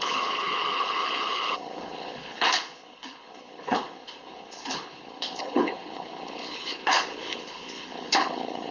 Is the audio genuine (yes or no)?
no